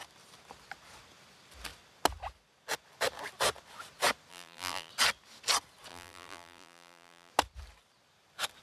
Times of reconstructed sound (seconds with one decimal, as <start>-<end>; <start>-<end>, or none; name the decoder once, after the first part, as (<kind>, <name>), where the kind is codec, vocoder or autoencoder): 4.3-4.9 (vocoder, BigVGAN v2); 5.9-7.3